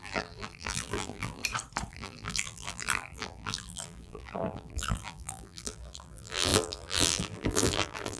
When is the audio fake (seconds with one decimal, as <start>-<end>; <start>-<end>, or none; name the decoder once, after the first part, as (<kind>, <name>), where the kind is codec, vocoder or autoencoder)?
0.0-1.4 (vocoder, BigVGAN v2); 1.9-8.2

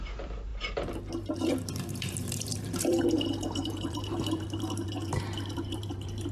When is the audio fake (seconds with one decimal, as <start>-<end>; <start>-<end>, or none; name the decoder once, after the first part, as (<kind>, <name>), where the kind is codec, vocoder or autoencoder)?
0.0-6.3 (vocoder, BigVGAN v2)

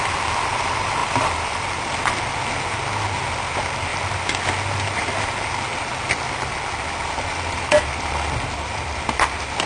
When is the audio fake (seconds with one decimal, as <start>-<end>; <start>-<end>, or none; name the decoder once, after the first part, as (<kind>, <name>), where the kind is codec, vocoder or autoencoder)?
1.0-2.0 (vocoder, BigVGAN v2)

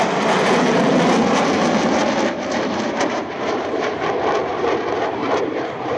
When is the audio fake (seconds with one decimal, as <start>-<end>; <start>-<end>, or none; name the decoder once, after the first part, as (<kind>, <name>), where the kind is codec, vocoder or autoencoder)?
2.0-4.0 (vocoder, BigVGAN v2); 4.5-6.0

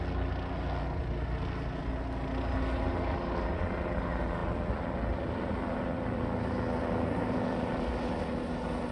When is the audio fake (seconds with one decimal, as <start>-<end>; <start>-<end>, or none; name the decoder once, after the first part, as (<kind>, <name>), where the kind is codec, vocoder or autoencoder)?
4.4-8.2 (vocoder, BigVGAN v2)